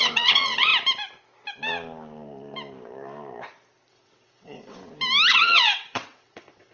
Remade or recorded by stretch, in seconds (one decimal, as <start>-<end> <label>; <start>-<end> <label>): 0.0-0.7 remade; 0.7-3.9 recorded; 3.9-4.8 remade; 4.8-5.3 recorded; 5.3-6.7 remade